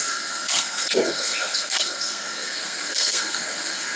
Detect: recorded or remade remade